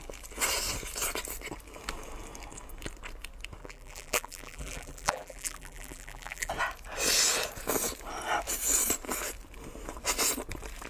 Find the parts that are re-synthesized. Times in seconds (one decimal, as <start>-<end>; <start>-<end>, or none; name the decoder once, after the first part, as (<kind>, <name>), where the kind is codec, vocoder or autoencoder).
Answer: 3.6-6.5 (vocoder, BigVGAN v2)